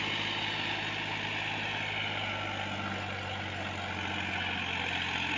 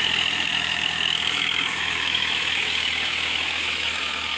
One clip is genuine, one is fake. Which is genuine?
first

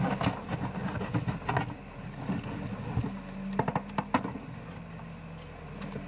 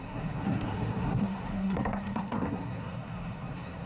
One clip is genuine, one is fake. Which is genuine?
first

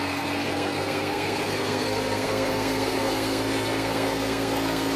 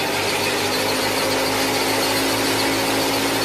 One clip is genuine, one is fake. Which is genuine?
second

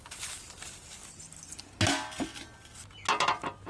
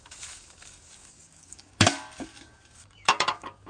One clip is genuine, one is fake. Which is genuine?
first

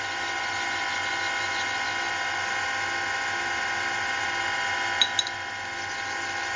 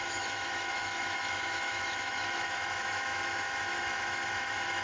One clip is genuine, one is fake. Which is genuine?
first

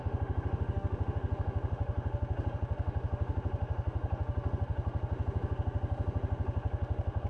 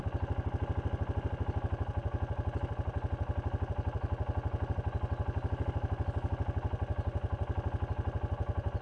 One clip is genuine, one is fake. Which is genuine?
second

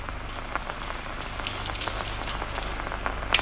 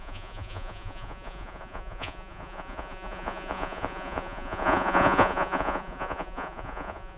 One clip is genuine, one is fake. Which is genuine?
first